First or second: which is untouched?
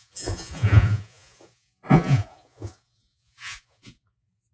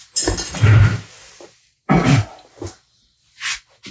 second